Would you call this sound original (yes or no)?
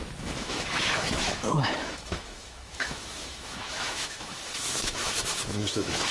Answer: no